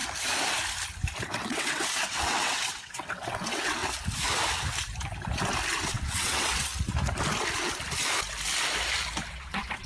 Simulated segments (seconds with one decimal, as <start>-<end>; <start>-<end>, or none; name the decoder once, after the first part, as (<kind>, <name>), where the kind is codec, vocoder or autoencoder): 1.2-3.8 (vocoder, WaveNeXt); 5.9-6.7; 9.3-9.9